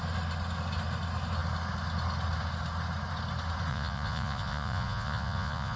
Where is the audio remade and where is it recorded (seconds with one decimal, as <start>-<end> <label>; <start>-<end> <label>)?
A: 0.0-3.7 recorded; 3.7-5.8 remade